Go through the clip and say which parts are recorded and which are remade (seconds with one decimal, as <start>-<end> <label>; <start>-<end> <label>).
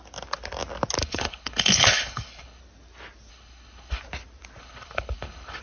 0.0-1.0 recorded; 1.0-2.6 remade; 2.6-3.3 recorded; 3.3-4.0 remade; 4.0-4.6 recorded; 4.6-5.6 remade